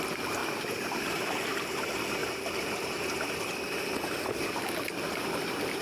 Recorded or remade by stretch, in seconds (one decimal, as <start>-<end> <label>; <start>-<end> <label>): 0.0-2.2 remade; 2.2-5.1 recorded; 5.1-5.8 remade